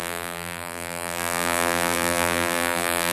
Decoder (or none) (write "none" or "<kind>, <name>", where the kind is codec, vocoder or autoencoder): vocoder, BigVGAN v2